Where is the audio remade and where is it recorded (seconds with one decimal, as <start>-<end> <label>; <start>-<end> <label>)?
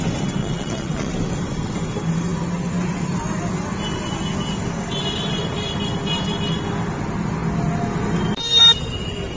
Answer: 0.0-0.4 recorded; 0.4-1.1 remade; 1.1-9.4 recorded